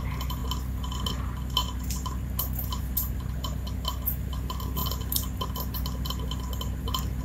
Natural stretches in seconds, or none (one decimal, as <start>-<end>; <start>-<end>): 0.0-7.2